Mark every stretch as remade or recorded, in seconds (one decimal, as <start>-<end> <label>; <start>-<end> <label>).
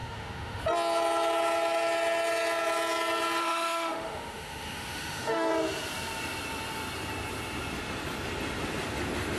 0.0-0.6 remade; 0.6-3.4 recorded; 3.4-5.5 remade; 5.5-9.4 recorded